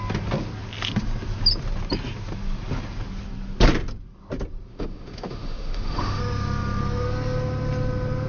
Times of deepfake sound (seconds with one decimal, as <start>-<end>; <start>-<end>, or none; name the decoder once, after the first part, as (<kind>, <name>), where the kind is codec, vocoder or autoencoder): 4.7-6.2 (autoencoder, DAC-VAE)